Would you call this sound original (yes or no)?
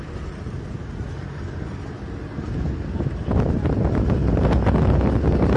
yes